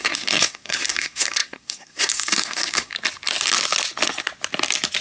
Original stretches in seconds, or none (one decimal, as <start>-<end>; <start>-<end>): 2.9-5.0